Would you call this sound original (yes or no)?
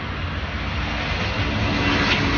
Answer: yes